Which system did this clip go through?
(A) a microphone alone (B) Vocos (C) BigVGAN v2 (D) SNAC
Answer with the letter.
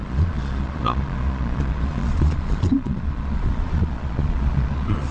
B